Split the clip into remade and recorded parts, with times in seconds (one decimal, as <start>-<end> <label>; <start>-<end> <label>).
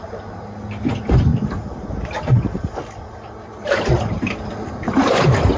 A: 0.0-5.6 recorded